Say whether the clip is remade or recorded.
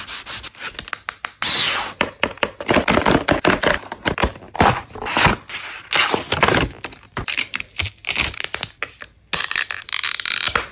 recorded